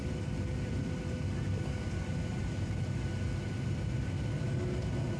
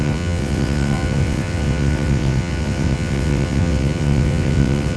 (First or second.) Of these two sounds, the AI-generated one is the second